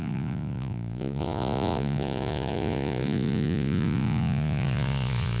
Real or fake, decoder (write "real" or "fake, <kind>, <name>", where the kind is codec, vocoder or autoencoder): fake, vocoder, Vocos